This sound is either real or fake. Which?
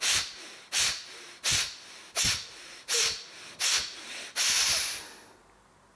real